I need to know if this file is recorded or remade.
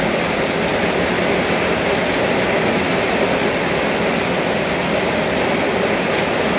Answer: recorded